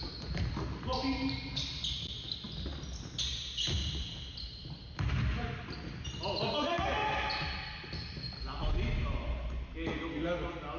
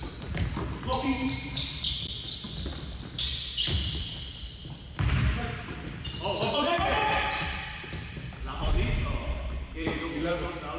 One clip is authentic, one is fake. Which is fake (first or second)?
second